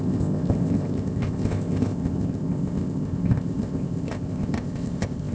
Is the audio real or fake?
fake